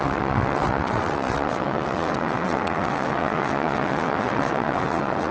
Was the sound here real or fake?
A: fake